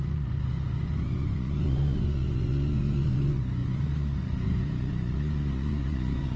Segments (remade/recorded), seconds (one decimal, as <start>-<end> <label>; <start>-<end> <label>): 0.0-6.4 remade